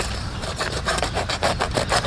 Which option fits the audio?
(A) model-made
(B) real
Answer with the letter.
A